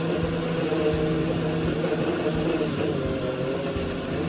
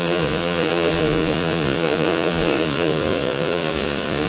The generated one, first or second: second